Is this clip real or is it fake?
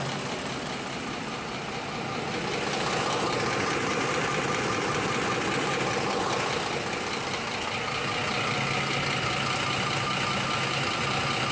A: real